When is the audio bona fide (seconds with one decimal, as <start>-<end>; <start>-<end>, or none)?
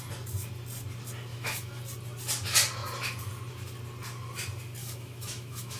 0.0-1.3; 1.8-4.8